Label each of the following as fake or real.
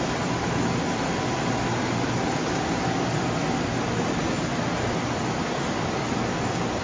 real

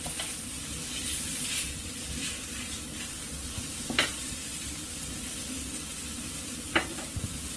real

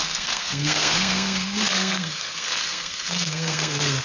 fake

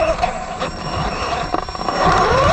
fake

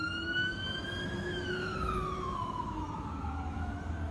fake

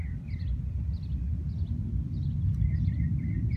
real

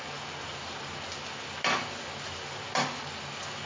real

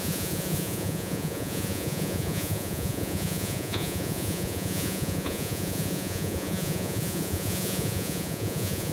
fake